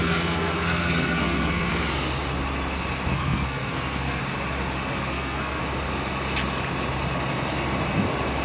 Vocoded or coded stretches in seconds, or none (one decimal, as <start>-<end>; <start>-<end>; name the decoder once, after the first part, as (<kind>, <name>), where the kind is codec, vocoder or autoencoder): 0.0-1.7 (codec, SNAC); 3.1-4.2; 5.0-5.6